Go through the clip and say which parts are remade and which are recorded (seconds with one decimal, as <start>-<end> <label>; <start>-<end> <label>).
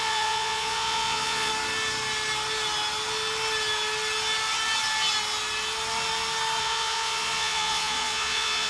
0.0-1.5 remade; 1.5-6.6 recorded; 6.6-8.7 remade